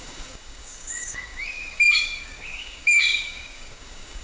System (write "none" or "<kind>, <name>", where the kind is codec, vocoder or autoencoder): codec, DAC